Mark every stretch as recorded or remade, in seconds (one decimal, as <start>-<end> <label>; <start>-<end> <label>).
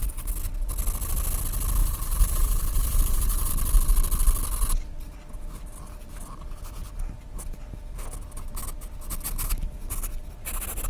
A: 0.0-1.8 recorded; 1.8-3.5 remade; 3.5-10.9 recorded